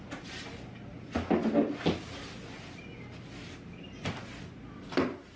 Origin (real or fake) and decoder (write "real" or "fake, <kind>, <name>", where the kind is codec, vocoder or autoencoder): real